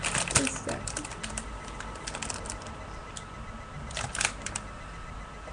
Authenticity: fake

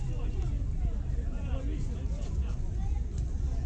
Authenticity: real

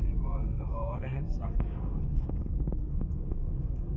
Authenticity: fake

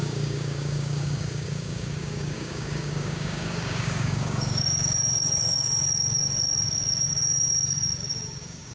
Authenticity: fake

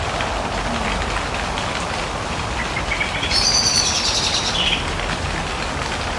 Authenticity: real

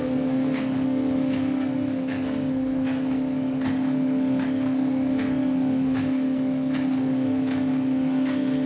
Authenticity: fake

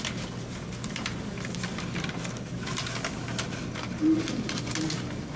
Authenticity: real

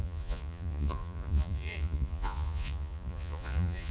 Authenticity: fake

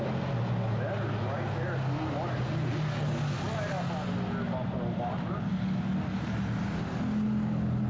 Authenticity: real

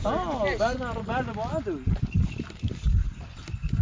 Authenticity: real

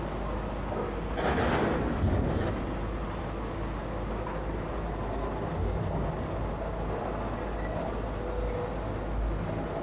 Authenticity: real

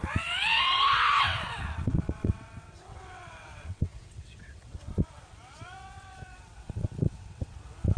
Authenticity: fake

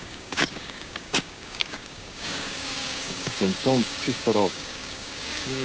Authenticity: fake